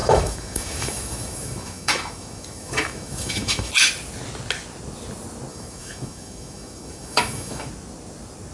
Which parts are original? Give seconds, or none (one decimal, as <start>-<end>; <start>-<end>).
3.7-5.5; 7.7-8.5